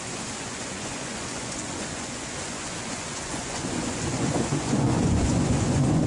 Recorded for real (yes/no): no